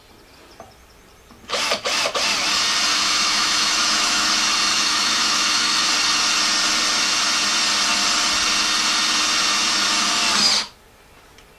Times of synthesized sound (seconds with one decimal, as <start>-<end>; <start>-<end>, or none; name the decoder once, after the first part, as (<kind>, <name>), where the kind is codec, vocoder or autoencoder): 2.9-4.3 (autoencoder, DAC-VAE); 4.7-5.9